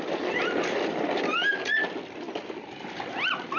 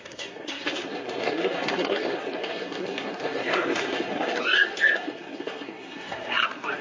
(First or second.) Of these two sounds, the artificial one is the second